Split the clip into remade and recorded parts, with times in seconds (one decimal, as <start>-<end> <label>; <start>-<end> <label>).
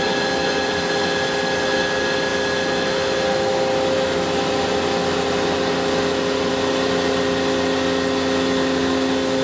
0.0-9.4 recorded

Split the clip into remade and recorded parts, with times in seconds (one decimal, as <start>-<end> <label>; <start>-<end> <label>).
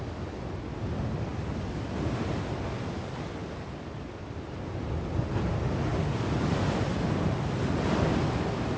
0.0-8.8 recorded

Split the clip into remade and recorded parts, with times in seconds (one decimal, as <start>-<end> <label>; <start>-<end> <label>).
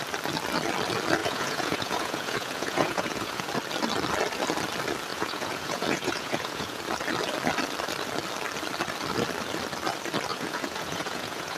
0.0-1.2 recorded; 1.2-3.5 remade; 3.5-5.1 recorded; 5.1-6.8 remade; 6.8-10.3 recorded; 10.3-11.6 remade